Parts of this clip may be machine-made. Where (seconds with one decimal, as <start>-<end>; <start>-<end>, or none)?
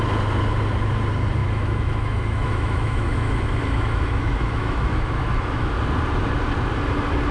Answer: 1.4-5.8